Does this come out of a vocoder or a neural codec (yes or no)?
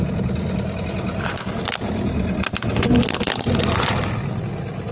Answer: no